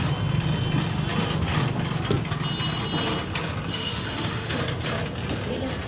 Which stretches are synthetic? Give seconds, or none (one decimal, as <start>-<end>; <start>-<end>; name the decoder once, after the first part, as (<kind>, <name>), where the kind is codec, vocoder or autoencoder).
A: 3.7-4.6 (autoencoder, DAC-VAE)